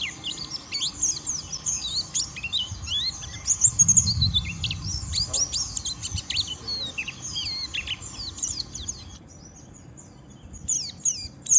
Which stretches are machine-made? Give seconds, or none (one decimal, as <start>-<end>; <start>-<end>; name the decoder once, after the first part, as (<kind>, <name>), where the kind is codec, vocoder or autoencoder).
none